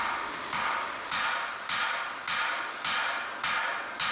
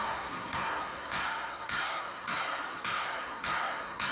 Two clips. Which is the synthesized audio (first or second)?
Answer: second